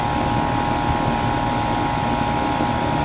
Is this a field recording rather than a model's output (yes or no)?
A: yes